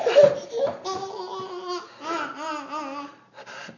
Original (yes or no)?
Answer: yes